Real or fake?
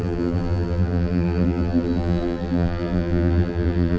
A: fake